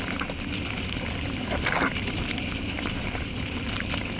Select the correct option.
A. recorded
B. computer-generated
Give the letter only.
A